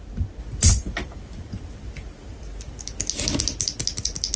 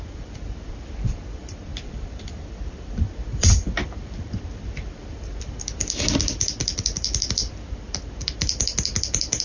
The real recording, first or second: first